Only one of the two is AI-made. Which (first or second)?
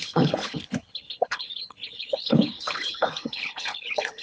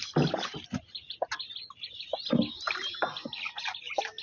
first